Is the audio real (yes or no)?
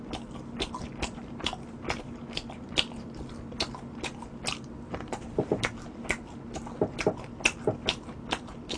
yes